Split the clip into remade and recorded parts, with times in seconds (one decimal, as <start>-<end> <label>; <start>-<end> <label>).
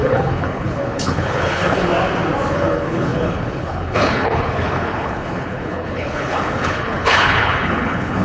0.0-1.9 remade; 1.9-2.5 recorded; 2.5-8.2 remade